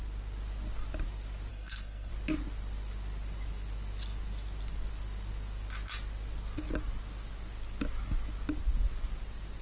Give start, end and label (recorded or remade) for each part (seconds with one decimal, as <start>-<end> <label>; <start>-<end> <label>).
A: 0.0-1.5 recorded; 1.5-2.1 remade; 2.1-9.6 recorded